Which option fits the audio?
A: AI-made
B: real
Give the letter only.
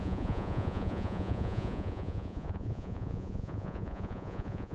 A